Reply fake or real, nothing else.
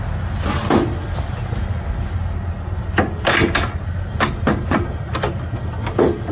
real